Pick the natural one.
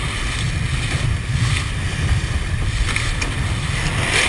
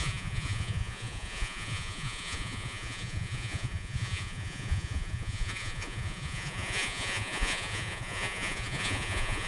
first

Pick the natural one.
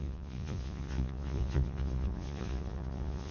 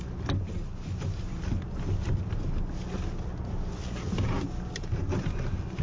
second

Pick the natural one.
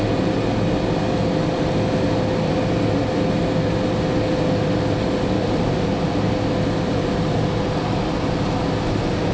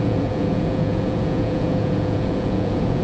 first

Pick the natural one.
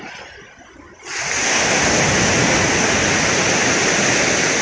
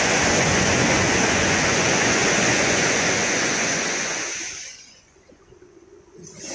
first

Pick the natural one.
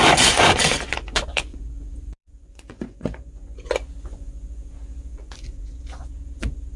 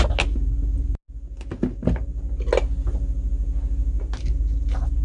second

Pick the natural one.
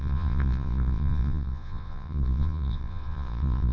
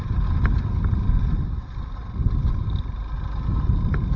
second